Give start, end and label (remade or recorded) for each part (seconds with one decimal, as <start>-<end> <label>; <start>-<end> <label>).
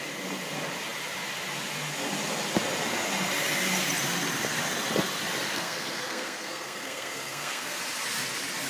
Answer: 0.0-5.5 recorded; 5.5-7.8 remade; 7.8-8.7 recorded